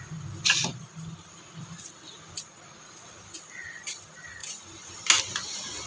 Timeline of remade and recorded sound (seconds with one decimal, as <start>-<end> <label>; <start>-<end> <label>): 0.0-4.4 recorded; 4.4-4.9 remade; 4.9-5.9 recorded